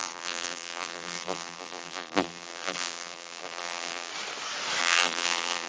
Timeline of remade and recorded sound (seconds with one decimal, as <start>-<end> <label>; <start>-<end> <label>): 0.0-4.1 remade; 4.1-4.8 recorded; 4.8-5.7 remade

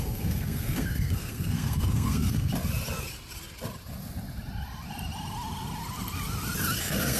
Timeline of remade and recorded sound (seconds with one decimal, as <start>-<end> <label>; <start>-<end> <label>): 0.0-2.5 remade; 2.5-6.8 recorded; 6.8-7.2 remade